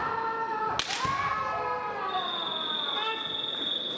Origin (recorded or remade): recorded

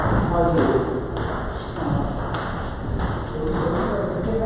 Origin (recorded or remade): recorded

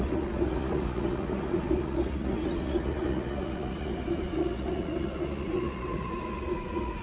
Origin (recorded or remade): remade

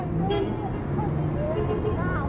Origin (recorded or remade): recorded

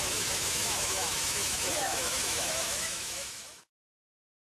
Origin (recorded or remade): remade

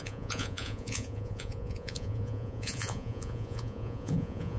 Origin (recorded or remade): remade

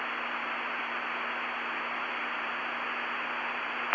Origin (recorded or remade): recorded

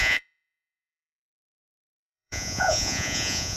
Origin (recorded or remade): remade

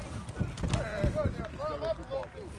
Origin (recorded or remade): recorded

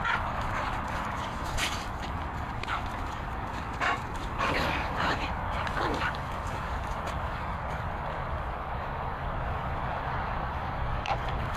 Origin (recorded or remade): remade